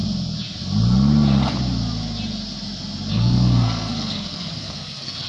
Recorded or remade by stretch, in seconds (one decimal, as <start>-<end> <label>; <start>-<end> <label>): 0.0-3.1 recorded; 3.1-5.3 remade